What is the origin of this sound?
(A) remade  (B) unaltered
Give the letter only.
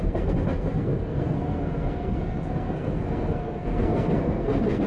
A